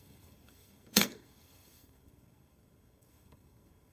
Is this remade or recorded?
remade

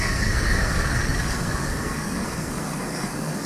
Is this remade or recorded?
remade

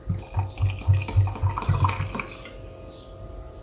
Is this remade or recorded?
recorded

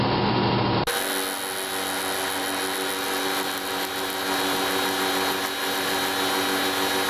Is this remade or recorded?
recorded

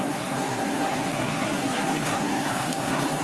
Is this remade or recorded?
remade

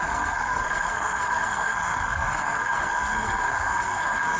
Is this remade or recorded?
remade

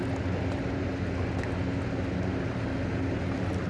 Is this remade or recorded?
recorded